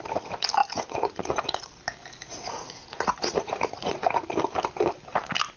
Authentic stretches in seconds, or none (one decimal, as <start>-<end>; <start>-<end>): 0.0-0.6; 1.8-2.2; 4.2-5.6